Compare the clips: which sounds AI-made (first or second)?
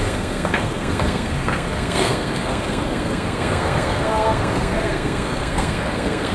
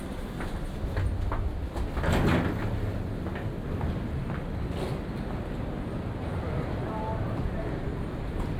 first